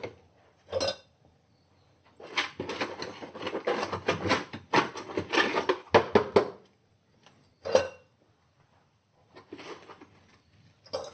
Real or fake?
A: real